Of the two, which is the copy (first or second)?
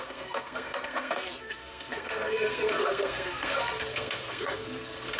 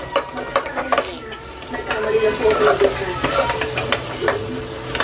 first